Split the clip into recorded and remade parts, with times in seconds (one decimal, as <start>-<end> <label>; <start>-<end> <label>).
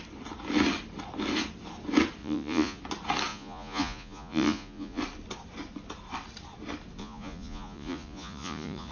0.0-2.2 recorded; 2.2-2.8 remade; 2.8-3.3 recorded; 3.3-5.0 remade; 5.0-7.0 recorded; 7.0-8.9 remade